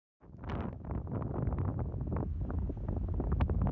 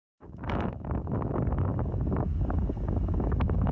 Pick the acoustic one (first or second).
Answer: first